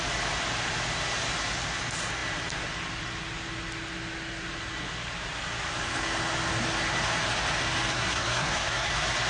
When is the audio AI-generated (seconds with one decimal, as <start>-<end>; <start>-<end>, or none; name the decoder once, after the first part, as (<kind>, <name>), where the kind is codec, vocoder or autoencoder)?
7.9-8.9 (codec, SNAC)